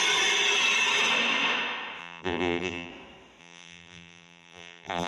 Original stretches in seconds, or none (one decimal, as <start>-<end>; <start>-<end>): 0.0-2.0; 2.9-3.4